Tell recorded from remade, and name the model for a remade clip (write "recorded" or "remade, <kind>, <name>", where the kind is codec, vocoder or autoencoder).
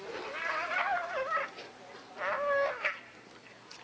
recorded